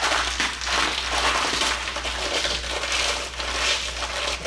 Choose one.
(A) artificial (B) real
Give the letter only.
B